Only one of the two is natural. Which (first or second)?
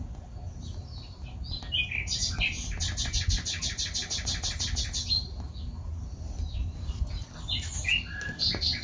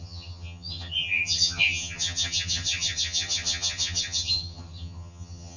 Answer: first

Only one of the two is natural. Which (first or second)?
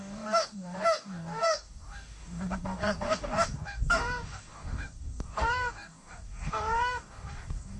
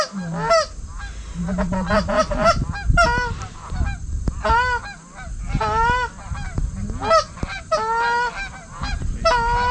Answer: second